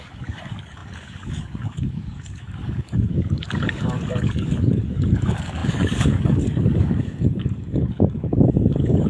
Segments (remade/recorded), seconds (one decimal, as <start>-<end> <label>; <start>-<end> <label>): 0.0-9.1 remade